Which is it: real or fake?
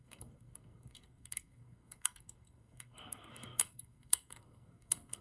fake